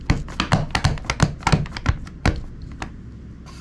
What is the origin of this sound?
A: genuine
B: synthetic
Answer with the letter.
A